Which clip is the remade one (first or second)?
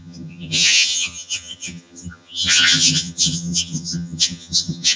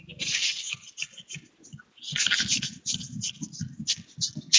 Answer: first